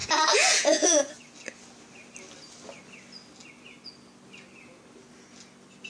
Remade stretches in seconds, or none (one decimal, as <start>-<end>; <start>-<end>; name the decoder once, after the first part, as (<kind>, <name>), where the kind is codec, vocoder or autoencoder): 0.0-1.1 (vocoder, Vocos)